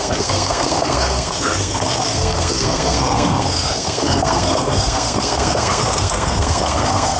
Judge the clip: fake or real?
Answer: fake